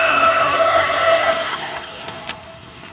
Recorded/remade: remade